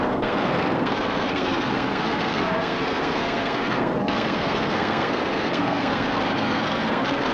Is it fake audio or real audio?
fake